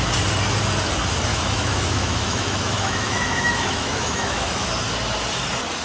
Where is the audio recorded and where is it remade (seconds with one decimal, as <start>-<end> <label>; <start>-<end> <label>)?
0.0-1.3 recorded; 1.3-4.7 remade; 4.7-5.8 recorded